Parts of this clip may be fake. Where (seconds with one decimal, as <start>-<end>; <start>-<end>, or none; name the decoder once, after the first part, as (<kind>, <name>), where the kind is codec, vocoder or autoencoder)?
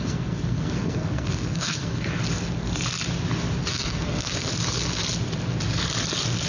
0.0-2.2 (codec, SNAC); 3.7-4.5